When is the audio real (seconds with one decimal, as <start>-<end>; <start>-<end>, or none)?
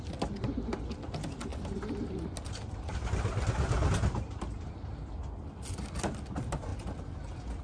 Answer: 0.0-7.6